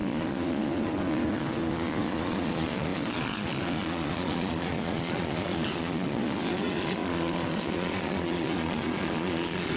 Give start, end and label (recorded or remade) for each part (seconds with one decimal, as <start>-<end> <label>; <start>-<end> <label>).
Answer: 0.0-9.8 remade